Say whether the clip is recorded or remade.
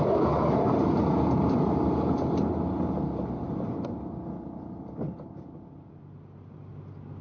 recorded